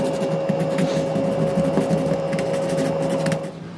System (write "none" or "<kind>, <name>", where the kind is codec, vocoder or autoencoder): none